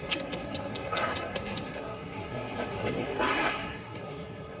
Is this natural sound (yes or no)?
no